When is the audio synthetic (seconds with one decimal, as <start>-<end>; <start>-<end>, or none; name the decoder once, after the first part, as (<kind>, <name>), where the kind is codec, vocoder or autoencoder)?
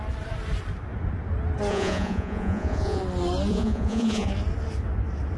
1.7-3.0 (vocoder, Vocos); 3.5-4.3